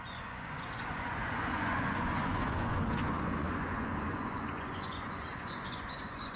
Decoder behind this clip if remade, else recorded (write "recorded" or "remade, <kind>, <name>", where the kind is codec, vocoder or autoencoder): remade, vocoder, Vocos